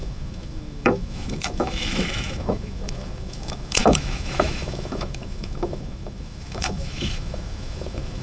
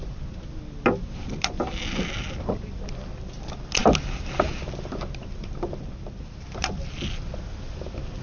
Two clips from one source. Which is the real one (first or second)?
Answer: second